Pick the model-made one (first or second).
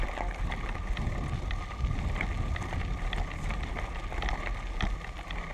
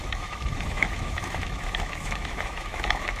second